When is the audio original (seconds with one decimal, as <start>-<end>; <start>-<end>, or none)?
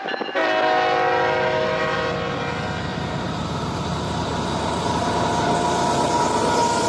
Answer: 0.0-2.9; 5.5-6.9